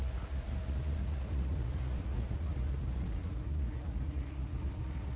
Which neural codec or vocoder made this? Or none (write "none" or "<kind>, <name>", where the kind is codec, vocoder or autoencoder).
vocoder, Vocos